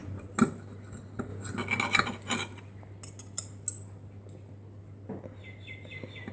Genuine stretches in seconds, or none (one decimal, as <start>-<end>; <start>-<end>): 0.0-6.3